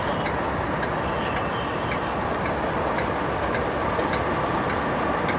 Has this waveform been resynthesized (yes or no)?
no